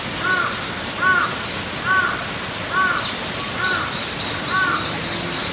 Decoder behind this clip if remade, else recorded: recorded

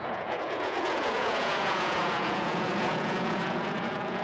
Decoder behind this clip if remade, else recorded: remade, vocoder, Vocos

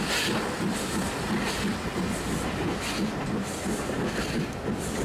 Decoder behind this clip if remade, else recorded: recorded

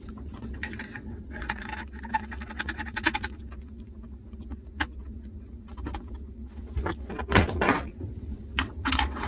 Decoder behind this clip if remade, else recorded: remade, vocoder, WaveNeXt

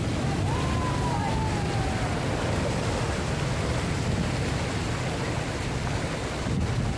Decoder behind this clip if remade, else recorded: recorded